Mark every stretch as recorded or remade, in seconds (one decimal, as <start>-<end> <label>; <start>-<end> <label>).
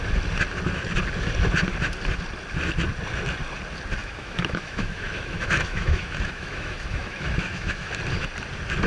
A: 0.0-4.0 recorded; 4.0-7.9 remade; 7.9-8.9 recorded